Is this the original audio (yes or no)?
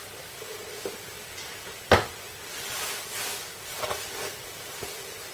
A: yes